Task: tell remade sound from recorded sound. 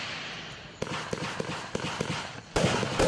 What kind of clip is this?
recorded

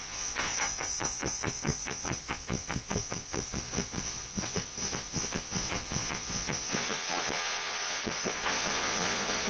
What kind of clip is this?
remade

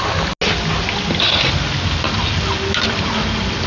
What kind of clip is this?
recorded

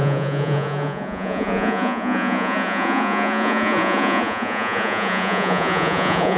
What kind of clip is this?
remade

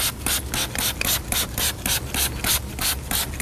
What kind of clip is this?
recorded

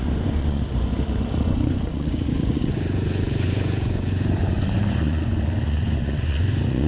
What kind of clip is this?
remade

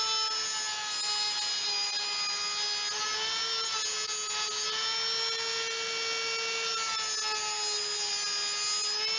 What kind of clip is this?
recorded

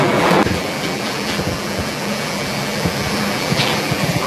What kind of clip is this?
remade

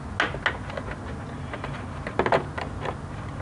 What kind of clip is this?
recorded